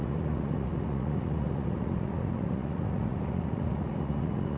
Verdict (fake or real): fake